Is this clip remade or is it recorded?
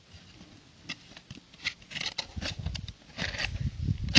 recorded